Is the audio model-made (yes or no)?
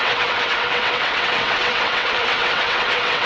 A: yes